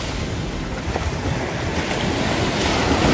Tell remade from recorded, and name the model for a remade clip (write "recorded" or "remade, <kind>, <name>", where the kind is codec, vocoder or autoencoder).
recorded